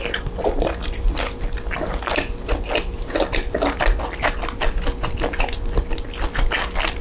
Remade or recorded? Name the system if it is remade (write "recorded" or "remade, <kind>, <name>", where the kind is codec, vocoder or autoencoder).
recorded